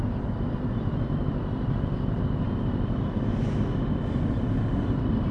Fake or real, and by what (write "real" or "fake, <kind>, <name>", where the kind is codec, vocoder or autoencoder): fake, vocoder, BigVGAN v2